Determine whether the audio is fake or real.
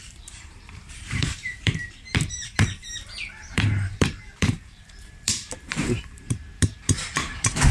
fake